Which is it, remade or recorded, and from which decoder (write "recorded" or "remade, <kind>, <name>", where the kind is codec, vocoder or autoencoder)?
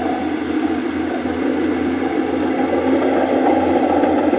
recorded